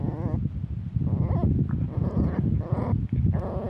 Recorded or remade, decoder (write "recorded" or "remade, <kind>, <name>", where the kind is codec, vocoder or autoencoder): recorded